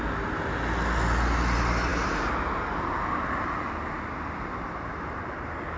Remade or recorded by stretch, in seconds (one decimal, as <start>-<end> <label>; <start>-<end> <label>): 0.0-5.8 recorded